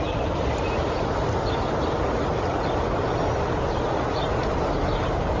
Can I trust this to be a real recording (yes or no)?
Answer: yes